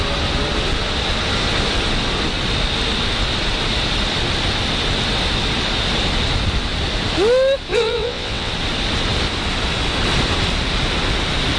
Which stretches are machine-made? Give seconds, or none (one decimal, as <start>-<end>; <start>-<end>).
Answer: 7.7-8.5